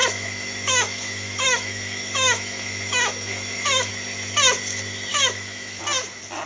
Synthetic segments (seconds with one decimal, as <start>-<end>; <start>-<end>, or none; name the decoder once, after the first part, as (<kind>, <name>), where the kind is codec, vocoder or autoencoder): 0.0-3.9 (autoencoder, DAC-VAE); 5.1-5.8